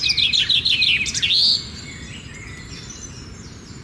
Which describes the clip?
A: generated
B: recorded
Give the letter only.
B